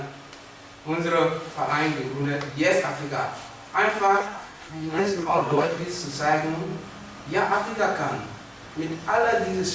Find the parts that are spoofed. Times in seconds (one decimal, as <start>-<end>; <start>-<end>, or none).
4.2-5.8